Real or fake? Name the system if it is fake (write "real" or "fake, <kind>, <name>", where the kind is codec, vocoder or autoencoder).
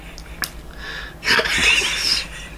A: real